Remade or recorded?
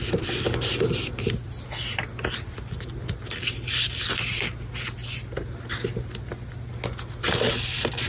recorded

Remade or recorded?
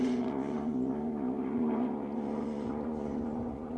remade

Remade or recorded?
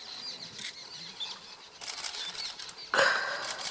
recorded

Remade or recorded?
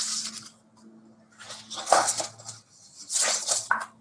recorded